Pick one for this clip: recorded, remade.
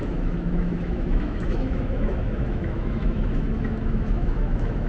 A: remade